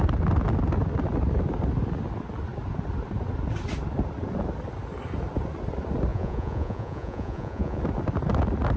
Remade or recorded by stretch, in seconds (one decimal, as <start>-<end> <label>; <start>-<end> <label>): 0.0-6.1 recorded; 6.1-7.8 remade; 7.8-8.8 recorded